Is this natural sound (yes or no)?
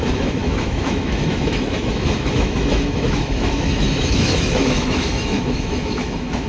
no